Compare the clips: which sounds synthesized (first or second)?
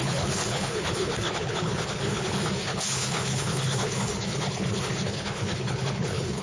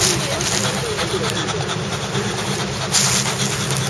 first